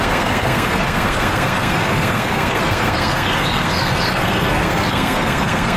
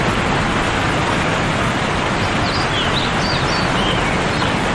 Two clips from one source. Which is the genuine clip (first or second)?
second